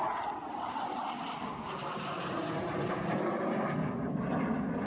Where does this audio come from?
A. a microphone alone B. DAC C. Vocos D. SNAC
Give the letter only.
A